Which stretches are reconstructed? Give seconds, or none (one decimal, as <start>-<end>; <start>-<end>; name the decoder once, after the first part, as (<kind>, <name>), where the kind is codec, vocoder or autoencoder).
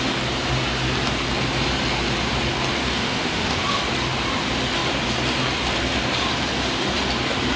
3.0-3.8 (autoencoder, DAC-VAE)